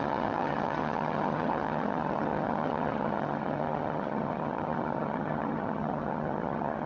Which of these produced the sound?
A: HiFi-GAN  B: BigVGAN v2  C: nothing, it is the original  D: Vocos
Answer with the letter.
A